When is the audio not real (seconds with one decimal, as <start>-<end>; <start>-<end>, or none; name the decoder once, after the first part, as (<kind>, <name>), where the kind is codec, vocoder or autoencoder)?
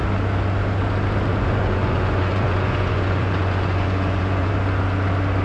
1.3-4.5 (vocoder, Vocos)